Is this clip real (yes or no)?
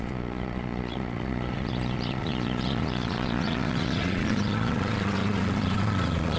no